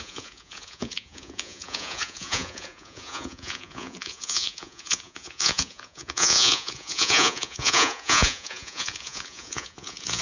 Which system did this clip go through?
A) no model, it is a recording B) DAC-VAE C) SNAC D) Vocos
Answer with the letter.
D